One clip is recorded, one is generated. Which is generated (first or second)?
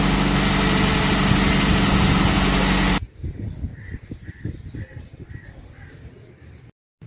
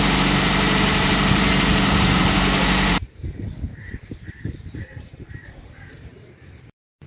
second